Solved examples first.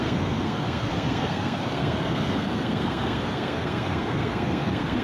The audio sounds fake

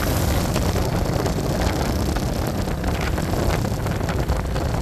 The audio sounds real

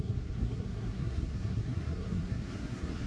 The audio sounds fake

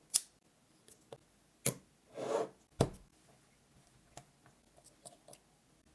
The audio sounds real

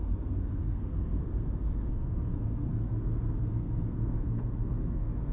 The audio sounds fake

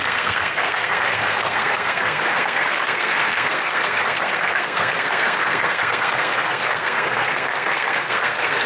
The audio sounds fake